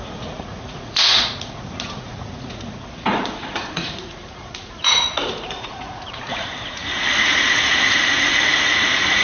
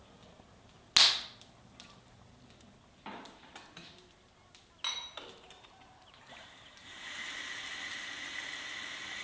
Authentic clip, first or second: second